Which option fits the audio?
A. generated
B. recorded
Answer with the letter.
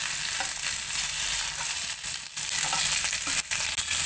B